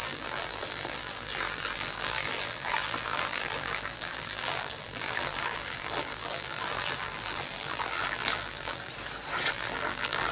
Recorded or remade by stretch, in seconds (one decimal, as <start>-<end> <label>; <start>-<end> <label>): 0.0-8.9 remade; 8.9-9.5 recorded; 9.5-10.3 remade

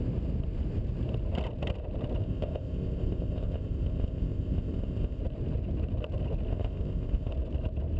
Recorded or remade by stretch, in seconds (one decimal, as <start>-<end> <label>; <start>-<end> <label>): 0.0-2.2 recorded; 2.2-5.2 remade; 5.2-6.5 recorded; 6.5-7.3 remade; 7.3-8.0 recorded

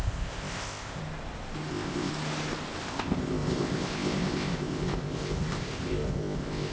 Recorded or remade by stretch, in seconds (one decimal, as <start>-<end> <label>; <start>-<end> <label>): 0.0-1.0 remade; 1.0-1.7 recorded; 1.7-2.1 remade; 2.1-2.8 recorded; 2.8-6.7 remade

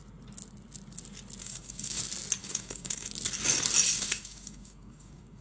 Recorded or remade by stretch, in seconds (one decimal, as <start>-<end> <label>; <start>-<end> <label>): 0.0-1.4 recorded; 1.4-2.0 remade; 2.0-2.4 recorded; 2.4-3.1 remade; 3.1-3.9 recorded; 3.9-5.4 remade

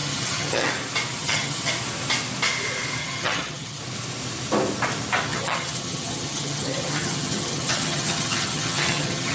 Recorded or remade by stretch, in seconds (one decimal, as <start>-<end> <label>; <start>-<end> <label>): 0.0-0.7 remade; 0.7-1.2 recorded; 1.2-1.7 remade; 1.7-3.0 recorded; 3.0-3.8 remade; 3.8-5.3 recorded; 5.3-9.3 remade

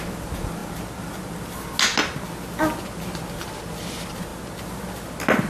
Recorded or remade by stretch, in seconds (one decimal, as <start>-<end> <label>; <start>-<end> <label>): 0.0-5.5 recorded

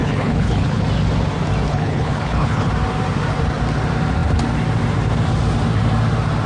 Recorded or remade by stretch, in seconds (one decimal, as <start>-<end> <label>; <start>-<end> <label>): 0.0-0.8 remade; 0.8-1.7 recorded; 1.7-2.7 remade; 2.7-6.5 recorded

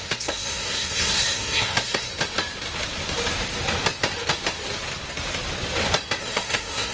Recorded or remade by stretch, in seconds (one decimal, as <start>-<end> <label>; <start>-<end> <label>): 0.0-2.1 remade; 2.1-6.2 recorded; 6.2-6.9 remade